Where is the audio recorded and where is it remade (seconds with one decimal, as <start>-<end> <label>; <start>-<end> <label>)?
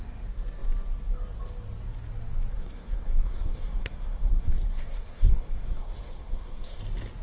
0.0-2.5 recorded; 2.5-6.8 remade; 6.8-7.2 recorded